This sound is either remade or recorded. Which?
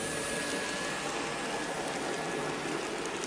recorded